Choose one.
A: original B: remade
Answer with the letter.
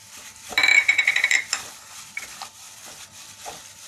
B